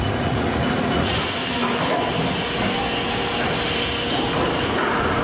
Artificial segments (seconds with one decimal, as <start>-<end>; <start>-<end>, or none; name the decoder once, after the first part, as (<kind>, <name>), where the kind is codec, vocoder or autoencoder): 0.0-1.4 (vocoder, Vocos); 4.5-5.2